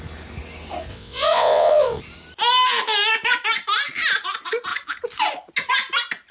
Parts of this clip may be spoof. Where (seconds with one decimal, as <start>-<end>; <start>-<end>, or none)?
0.9-2.0